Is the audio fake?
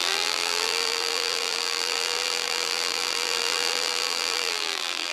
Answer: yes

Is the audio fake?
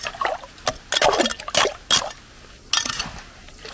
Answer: no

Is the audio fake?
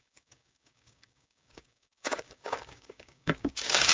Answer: yes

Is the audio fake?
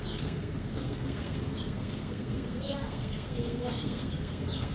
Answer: yes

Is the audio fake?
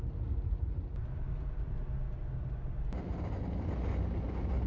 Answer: no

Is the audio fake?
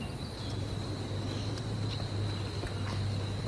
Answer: no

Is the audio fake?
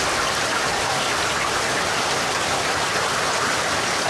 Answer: no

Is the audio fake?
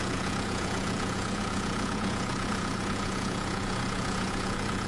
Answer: yes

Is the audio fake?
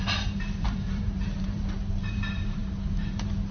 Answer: yes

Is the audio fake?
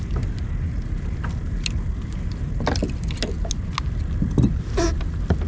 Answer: no